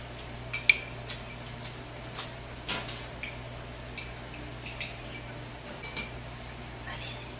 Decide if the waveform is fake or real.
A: real